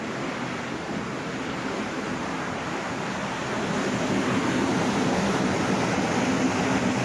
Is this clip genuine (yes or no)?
yes